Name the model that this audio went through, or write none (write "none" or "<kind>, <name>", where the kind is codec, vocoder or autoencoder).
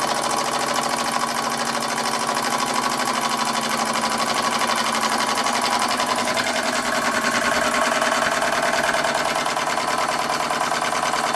none